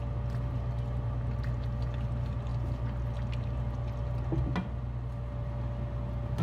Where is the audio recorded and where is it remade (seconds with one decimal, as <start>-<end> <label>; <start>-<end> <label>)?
0.0-6.4 recorded